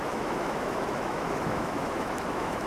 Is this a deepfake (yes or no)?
yes